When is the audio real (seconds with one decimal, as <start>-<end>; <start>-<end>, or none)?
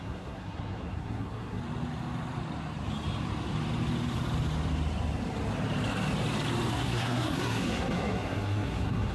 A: 1.6-6.7